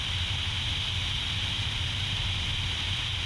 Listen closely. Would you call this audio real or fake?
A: real